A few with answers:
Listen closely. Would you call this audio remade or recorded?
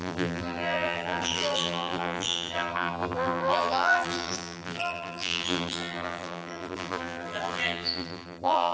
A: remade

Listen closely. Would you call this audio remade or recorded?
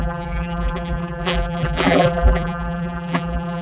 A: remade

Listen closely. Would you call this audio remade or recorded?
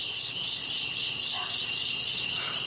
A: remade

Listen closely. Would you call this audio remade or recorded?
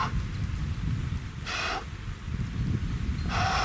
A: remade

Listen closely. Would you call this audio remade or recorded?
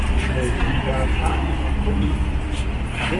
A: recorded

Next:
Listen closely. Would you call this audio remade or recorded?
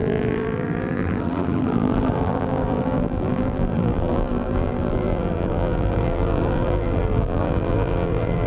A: remade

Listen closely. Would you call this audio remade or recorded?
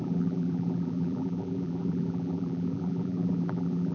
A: remade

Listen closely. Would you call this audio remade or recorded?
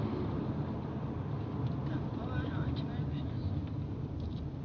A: remade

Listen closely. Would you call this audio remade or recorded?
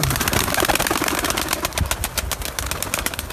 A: recorded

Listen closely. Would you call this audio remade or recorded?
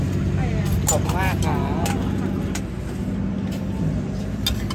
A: recorded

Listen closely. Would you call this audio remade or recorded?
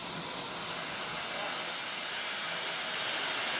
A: recorded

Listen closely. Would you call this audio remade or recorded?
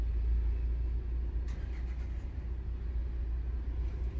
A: recorded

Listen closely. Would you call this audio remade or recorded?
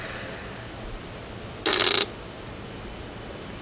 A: recorded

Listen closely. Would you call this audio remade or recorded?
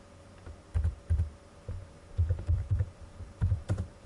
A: remade